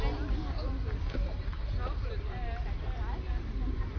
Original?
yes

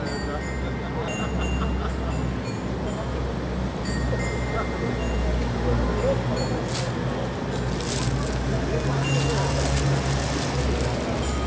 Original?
yes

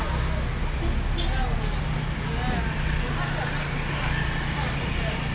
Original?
yes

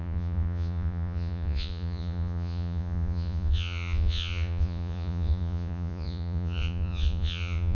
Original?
no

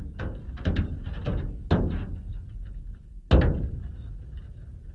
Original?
yes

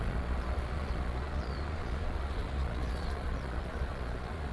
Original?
no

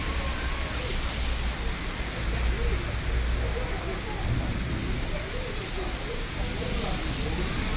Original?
yes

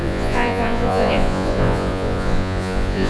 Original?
no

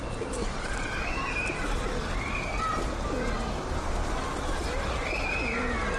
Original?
yes